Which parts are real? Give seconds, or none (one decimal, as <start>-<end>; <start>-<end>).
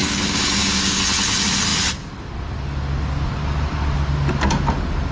1.0-5.1